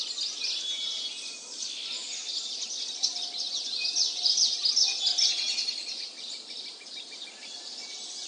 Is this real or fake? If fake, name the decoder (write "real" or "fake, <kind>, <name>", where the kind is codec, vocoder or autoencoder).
real